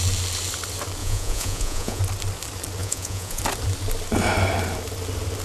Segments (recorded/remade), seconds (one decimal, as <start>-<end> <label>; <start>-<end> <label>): 0.0-1.0 recorded; 1.0-2.0 remade; 2.0-2.8 recorded; 2.8-3.4 remade; 3.4-5.4 recorded